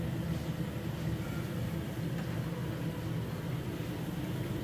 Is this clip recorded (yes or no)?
yes